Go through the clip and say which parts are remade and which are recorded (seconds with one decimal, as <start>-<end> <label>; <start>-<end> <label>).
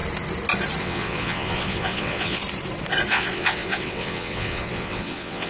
0.0-0.8 recorded; 0.8-2.4 remade; 2.4-3.1 recorded; 3.1-5.5 remade